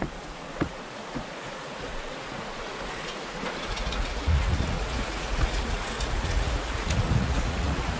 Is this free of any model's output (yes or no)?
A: no